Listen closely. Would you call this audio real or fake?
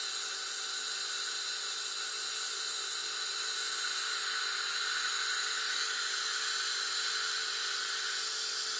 real